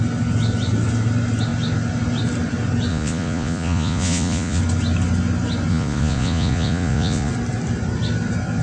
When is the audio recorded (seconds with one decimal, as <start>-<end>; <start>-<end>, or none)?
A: 0.0-2.9; 4.6-5.7; 7.3-8.6